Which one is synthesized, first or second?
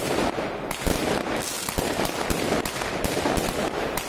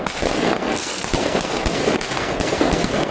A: second